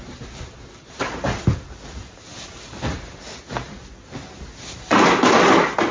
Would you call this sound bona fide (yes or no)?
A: yes